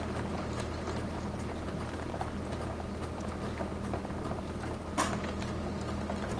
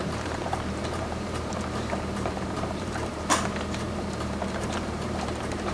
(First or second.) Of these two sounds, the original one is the first